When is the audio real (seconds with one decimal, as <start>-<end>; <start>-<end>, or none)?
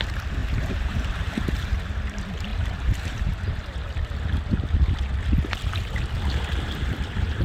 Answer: 0.0-0.4; 1.8-2.5; 3.4-7.4